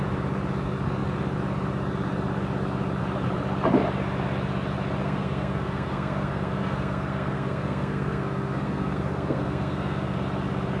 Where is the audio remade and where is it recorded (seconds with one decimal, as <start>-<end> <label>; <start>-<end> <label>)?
0.0-5.0 recorded; 5.0-10.2 remade; 10.2-10.8 recorded